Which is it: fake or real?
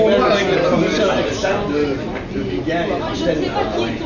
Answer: real